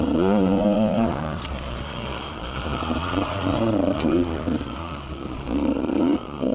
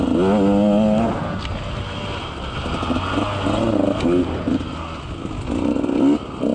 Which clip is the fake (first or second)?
first